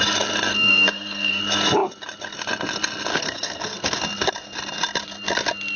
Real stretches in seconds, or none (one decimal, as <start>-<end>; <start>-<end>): 0.0-0.5; 1.4-3.1; 4.0-5.8